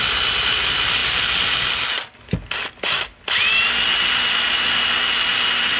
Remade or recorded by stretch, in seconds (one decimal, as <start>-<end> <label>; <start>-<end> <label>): 0.0-5.8 recorded